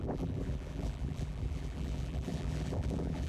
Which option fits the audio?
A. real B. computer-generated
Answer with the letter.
B